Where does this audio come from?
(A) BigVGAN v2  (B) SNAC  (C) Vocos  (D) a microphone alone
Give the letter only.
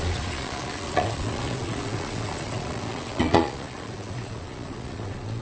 C